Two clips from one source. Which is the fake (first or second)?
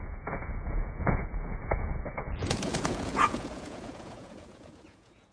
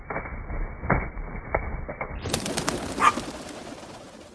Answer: first